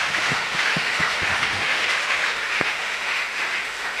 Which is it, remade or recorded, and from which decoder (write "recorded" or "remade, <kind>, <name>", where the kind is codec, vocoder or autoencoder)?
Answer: remade, autoencoder, DAC-VAE